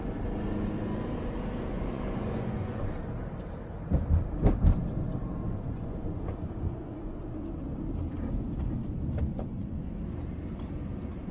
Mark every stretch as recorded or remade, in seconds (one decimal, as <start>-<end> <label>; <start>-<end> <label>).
0.0-1.7 recorded; 1.7-2.8 remade; 2.8-5.5 recorded; 5.5-7.2 remade; 7.2-9.3 recorded; 9.3-9.9 remade; 9.9-11.3 recorded